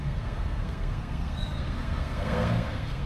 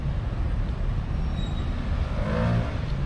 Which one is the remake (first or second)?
first